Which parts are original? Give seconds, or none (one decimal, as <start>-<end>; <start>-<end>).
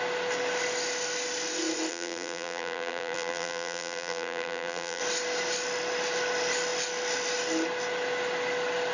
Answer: 0.0-1.9; 5.0-8.9